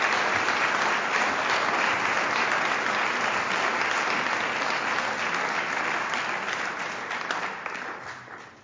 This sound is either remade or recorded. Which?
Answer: recorded